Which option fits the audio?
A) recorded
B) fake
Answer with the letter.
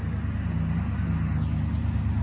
A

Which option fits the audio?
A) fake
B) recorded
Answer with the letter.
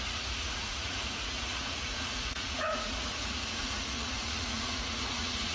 A